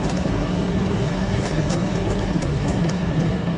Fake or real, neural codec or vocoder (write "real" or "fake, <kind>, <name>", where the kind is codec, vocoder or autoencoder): fake, codec, SNAC